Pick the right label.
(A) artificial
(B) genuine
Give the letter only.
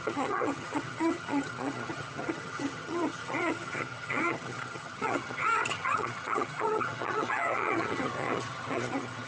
A